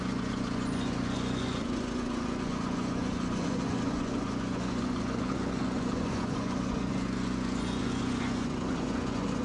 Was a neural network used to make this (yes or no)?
yes